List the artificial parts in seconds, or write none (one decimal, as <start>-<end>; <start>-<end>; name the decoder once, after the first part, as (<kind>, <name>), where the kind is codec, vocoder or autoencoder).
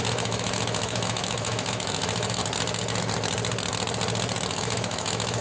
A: 0.0-2.4 (autoencoder, DAC-VAE); 4.5-5.4